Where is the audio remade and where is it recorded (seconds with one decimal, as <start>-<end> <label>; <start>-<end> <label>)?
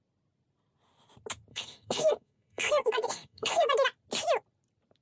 0.0-1.5 recorded; 1.5-3.7 remade; 3.7-5.0 recorded